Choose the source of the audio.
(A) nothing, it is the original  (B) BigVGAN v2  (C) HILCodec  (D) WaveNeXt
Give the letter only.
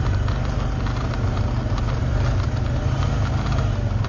A